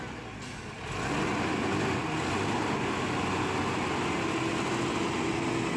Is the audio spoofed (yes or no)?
no